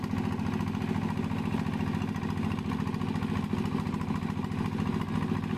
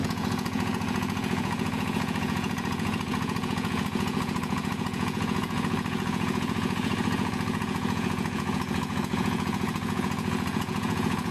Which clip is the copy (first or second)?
second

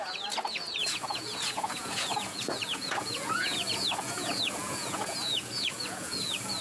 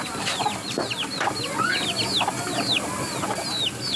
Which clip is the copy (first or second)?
first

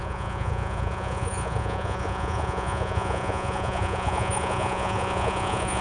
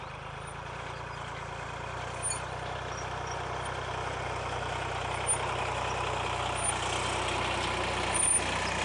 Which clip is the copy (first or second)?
first